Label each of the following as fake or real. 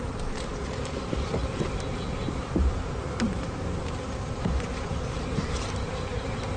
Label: fake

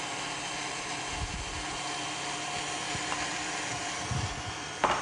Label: real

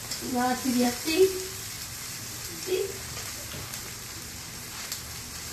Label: fake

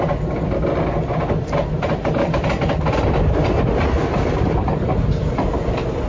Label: real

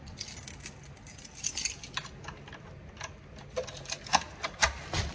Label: real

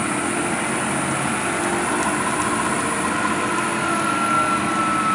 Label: real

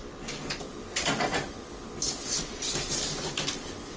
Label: real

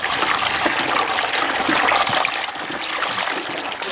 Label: fake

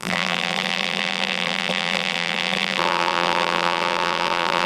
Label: fake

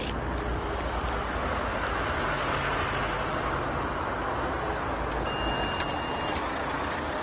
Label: real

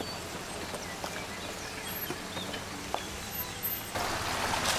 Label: real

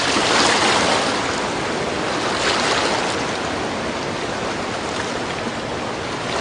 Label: real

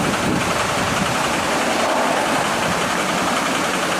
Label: fake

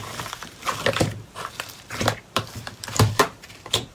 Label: fake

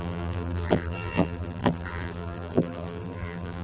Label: fake